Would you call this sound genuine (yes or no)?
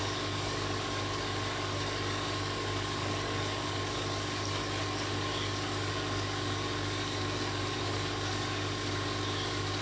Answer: no